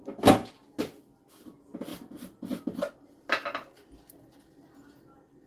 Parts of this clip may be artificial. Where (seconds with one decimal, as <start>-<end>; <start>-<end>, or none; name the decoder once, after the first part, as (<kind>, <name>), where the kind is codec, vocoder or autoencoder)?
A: none